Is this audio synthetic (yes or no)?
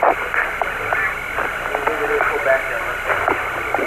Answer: no